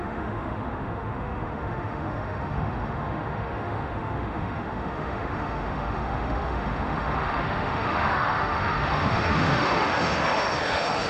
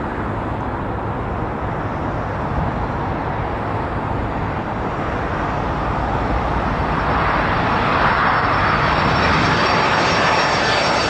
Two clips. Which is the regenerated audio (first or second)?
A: first